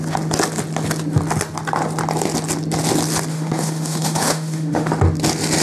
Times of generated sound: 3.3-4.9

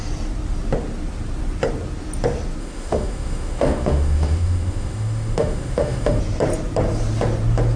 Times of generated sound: 2.6-6.2

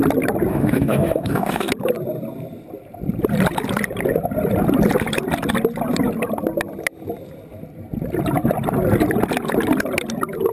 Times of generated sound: 0.5-1.7